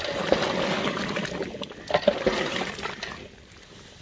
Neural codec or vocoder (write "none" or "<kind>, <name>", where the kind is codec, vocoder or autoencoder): none